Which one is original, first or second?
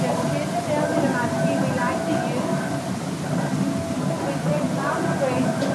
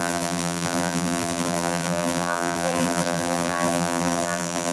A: first